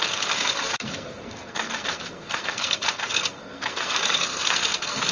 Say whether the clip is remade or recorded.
remade